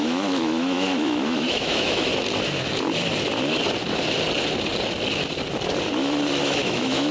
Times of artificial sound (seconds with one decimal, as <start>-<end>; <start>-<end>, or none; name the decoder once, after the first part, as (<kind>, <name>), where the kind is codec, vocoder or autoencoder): 0.0-2.1 (autoencoder, DAC-VAE); 6.4-7.1